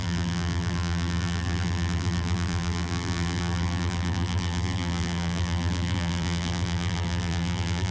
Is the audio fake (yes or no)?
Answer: yes